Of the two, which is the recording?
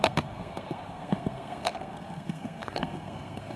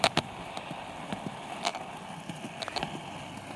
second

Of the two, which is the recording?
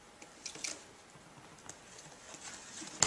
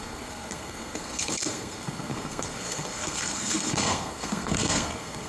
first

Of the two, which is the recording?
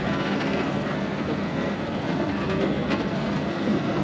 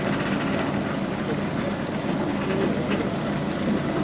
second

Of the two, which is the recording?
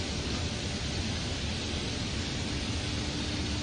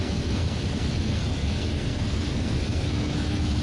first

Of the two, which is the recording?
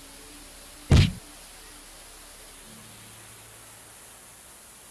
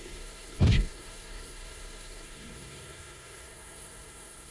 first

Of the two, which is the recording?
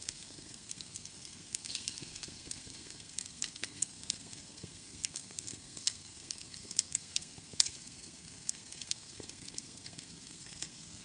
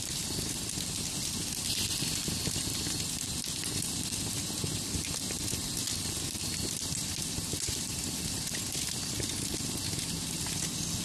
second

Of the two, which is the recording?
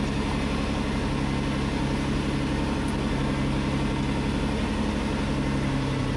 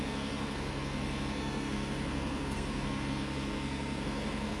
first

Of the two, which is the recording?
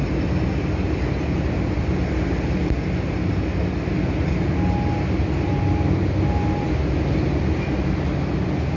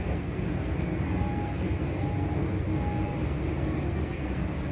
first